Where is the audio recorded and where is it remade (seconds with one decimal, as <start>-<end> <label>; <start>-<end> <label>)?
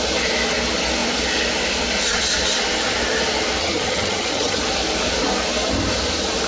0.0-3.6 recorded; 3.6-4.6 remade; 4.6-6.5 recorded